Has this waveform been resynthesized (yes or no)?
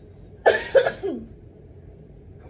yes